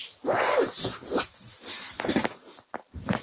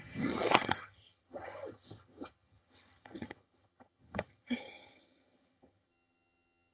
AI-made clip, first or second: second